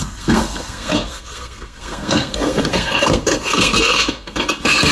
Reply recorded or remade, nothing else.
remade